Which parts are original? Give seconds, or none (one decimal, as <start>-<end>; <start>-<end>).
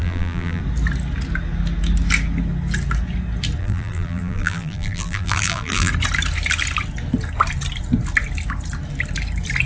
0.6-3.6; 5.9-9.7